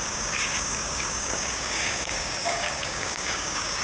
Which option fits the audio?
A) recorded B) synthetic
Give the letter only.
B